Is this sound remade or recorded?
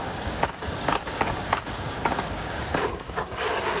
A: remade